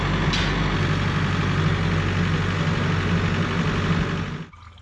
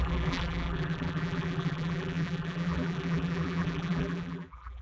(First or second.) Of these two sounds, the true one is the first